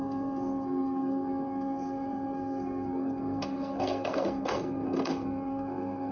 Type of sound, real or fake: fake